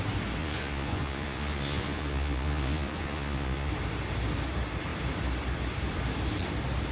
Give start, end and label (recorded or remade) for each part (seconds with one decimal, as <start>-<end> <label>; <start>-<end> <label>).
0.0-0.4 recorded; 0.4-3.7 remade; 3.7-6.9 recorded